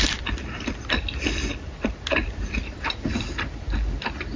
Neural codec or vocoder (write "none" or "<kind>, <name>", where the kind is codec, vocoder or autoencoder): none